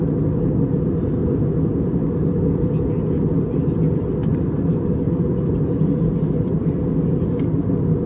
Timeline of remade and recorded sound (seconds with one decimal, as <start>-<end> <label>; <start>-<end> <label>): 0.0-8.1 recorded